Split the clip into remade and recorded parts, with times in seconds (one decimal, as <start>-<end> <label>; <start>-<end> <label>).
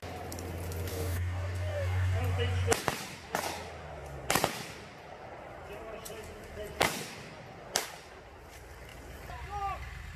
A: 0.0-0.9 recorded; 0.9-2.2 remade; 2.2-10.2 recorded